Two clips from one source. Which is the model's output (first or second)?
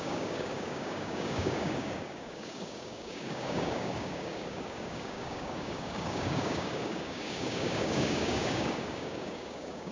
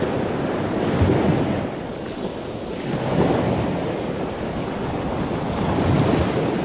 first